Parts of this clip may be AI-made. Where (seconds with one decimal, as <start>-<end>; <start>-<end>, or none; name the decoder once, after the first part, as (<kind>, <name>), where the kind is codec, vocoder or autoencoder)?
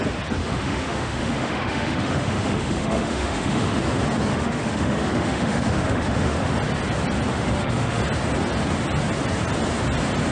0.4-3.8 (autoencoder, DAC-VAE); 4.3-6.5; 7.3-8.0